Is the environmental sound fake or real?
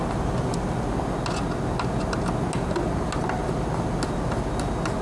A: real